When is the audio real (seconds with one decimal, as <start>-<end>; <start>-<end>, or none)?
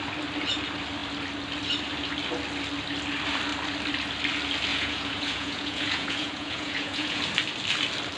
0.0-4.7; 7.2-8.2